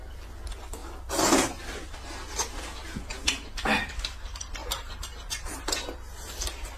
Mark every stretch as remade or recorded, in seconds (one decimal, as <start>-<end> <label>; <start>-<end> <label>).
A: 0.0-3.1 recorded; 3.1-3.8 remade; 3.8-4.6 recorded; 4.6-5.7 remade; 5.7-6.8 recorded